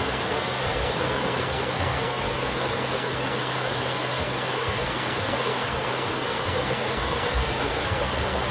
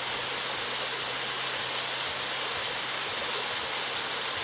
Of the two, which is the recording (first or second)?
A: second